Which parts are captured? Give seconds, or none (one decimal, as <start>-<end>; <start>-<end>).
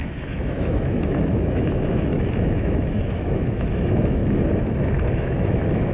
4.2-5.1